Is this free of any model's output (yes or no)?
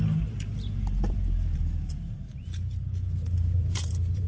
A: no